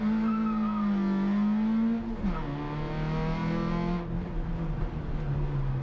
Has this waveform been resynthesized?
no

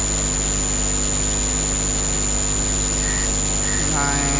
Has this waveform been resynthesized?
no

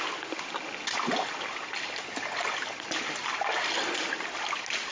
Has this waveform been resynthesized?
no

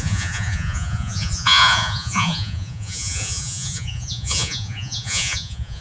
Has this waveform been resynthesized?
yes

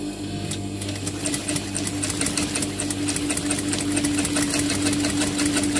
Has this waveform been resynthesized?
no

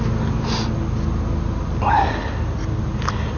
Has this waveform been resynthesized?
no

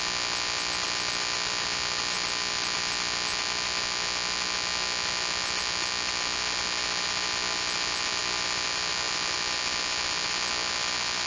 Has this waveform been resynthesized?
no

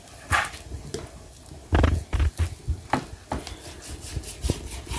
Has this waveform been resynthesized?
no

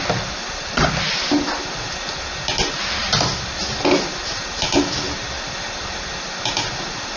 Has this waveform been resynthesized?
no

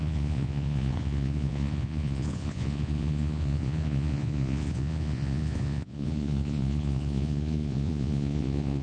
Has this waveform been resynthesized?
yes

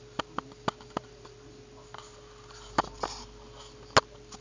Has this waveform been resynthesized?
no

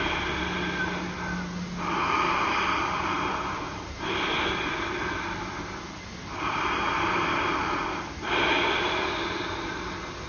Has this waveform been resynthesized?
no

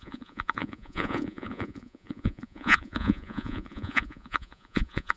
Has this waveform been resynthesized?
yes